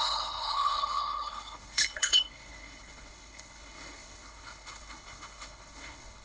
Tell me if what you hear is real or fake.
fake